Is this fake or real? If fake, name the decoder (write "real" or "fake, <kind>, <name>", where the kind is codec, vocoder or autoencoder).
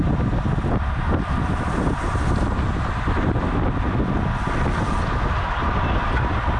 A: real